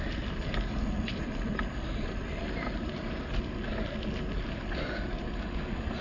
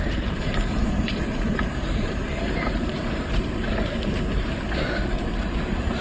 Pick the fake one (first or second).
second